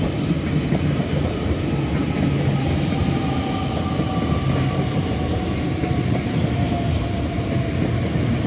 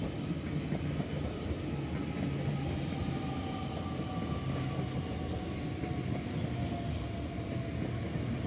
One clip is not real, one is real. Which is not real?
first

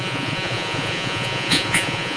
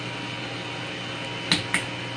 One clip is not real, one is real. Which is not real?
first